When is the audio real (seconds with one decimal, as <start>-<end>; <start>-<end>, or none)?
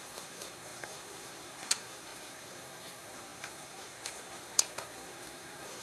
none